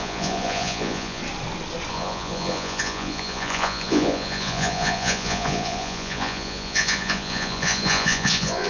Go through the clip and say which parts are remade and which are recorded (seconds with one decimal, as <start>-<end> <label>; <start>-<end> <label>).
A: 0.0-1.2 remade; 1.2-1.9 recorded; 1.9-8.7 remade